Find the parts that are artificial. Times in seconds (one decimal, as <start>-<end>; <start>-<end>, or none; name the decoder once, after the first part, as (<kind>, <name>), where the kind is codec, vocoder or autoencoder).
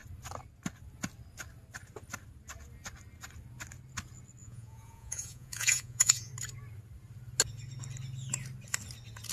4.4-6.3 (vocoder, Vocos)